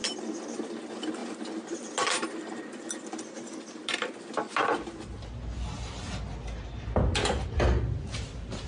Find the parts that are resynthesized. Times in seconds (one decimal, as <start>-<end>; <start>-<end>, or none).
none